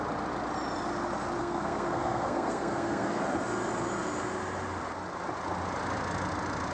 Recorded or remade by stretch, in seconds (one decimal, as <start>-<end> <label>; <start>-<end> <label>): 0.0-1.4 recorded; 1.4-3.2 remade; 3.2-6.7 recorded